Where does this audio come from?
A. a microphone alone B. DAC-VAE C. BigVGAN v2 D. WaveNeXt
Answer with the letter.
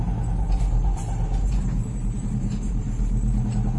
C